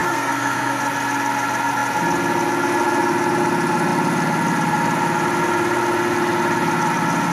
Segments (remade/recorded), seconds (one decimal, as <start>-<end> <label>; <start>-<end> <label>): 0.0-0.8 remade; 0.8-7.3 recorded